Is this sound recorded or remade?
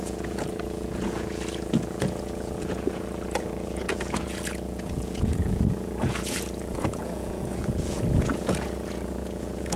remade